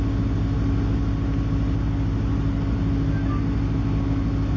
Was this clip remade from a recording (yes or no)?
no